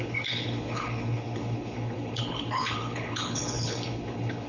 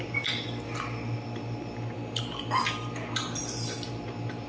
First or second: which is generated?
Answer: first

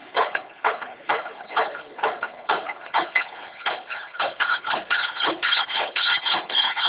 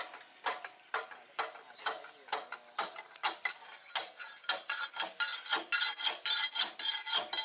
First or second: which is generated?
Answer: first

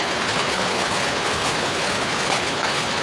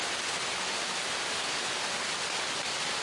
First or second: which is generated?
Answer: first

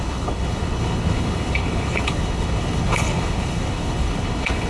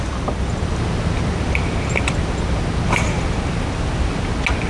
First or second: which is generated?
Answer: first